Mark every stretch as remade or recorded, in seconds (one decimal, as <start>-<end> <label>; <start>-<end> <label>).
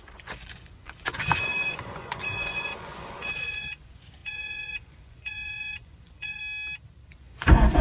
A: 0.0-6.4 remade; 6.4-7.1 recorded; 7.1-7.8 remade